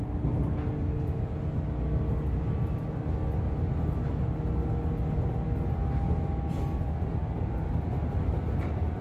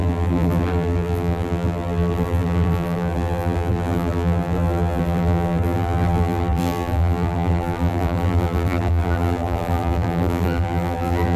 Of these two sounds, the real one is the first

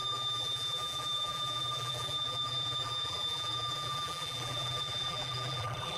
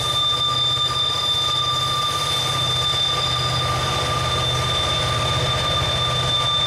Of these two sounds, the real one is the second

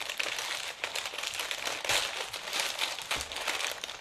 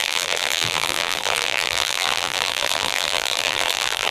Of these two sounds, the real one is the first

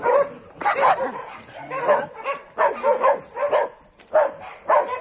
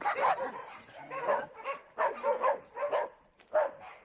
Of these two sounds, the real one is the first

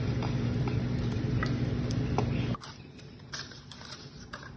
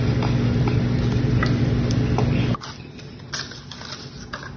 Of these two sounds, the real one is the second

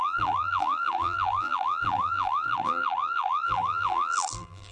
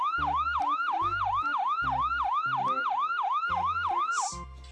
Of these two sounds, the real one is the second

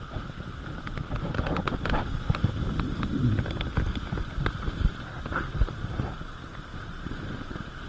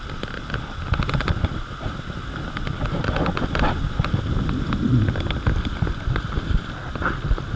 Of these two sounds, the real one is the second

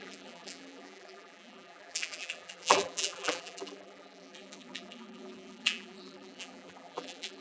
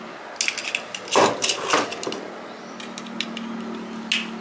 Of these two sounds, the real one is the second